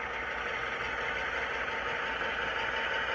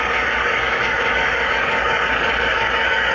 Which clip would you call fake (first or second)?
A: second